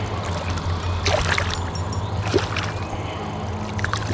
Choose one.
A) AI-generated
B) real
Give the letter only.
B